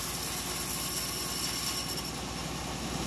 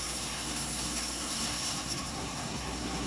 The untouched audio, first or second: first